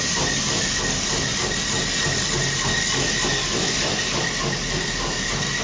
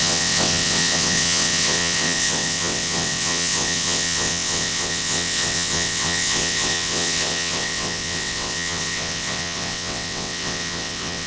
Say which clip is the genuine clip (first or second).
first